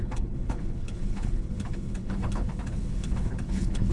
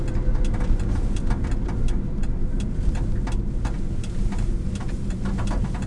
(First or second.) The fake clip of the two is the first